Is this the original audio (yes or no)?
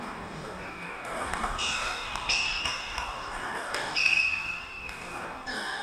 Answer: no